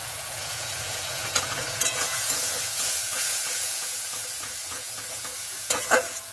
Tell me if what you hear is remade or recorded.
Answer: remade